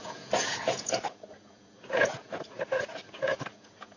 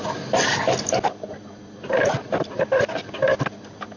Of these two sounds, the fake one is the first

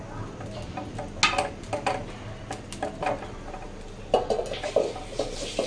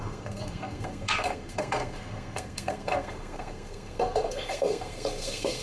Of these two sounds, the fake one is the second